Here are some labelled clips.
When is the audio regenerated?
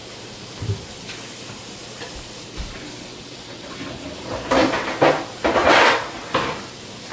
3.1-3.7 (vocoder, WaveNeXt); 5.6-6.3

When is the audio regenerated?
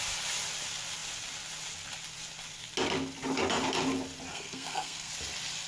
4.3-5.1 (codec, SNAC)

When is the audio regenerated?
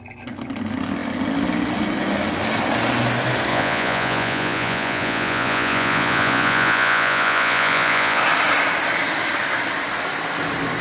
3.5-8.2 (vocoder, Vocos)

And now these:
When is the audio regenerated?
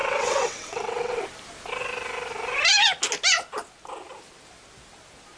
0.0-1.2 (vocoder, WaveNeXt)